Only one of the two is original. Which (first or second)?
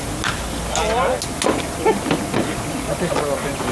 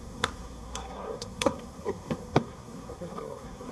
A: first